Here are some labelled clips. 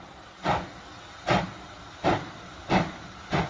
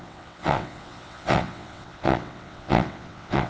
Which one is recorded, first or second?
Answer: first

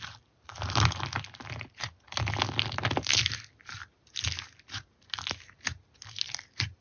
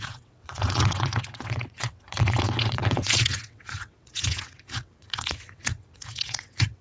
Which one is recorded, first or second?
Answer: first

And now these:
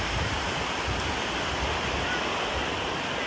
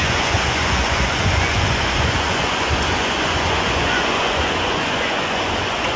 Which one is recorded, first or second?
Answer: first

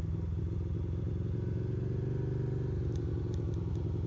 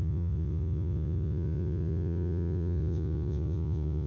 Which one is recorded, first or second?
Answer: first